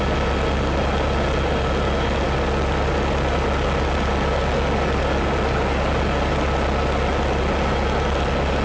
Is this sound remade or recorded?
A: recorded